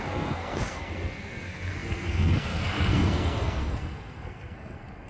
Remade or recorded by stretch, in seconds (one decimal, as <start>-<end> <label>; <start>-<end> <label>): 0.0-5.1 remade